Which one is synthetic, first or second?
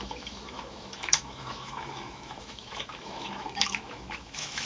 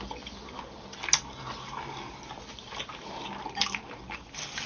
first